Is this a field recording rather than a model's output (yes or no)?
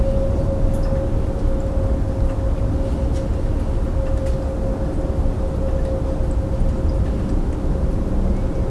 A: yes